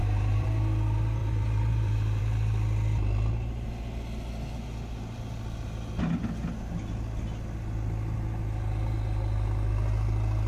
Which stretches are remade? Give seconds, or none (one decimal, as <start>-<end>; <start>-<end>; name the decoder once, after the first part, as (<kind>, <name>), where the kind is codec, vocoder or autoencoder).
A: 0.0-0.6 (vocoder, BigVGAN v2); 1.2-2.2